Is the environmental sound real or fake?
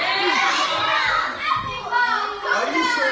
real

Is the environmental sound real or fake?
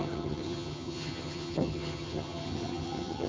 fake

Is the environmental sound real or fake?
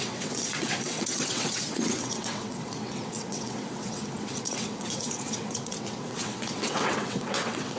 fake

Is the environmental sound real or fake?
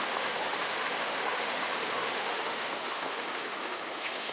fake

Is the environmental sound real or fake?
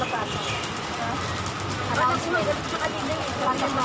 real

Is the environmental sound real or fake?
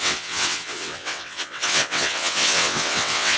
fake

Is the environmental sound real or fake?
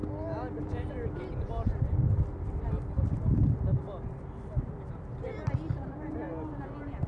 real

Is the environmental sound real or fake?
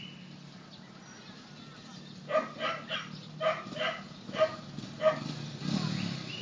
real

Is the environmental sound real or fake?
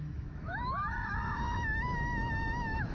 fake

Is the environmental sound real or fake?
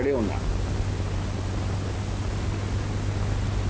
real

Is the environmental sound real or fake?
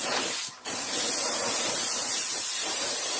fake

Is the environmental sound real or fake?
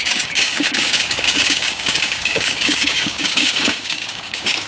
fake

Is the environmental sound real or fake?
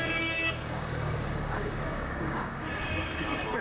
fake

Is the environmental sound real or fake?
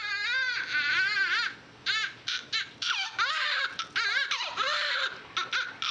fake